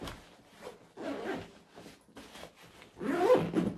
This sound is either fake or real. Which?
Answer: real